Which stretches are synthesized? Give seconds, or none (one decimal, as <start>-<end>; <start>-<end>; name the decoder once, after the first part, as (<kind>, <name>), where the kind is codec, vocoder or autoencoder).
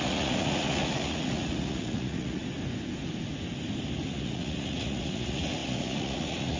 0.0-2.4 (vocoder, Vocos); 4.1-6.6